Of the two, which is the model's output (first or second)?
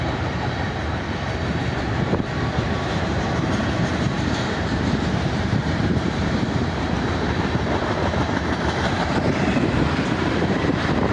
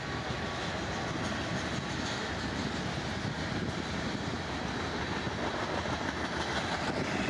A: first